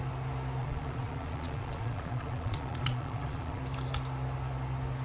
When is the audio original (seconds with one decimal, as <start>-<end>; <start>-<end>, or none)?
0.0-0.6; 3.6-5.0